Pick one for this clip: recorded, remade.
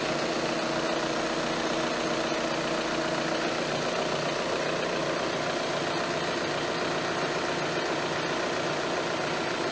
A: recorded